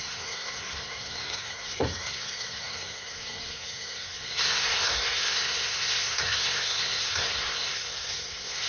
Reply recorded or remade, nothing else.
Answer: remade